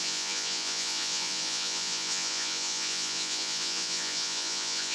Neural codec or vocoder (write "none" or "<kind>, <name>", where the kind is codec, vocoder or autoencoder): vocoder, Vocos